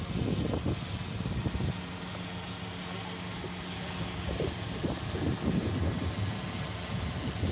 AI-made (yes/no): no